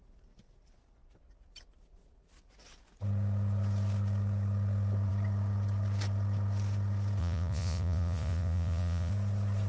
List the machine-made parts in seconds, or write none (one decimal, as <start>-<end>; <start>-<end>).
7.2-9.1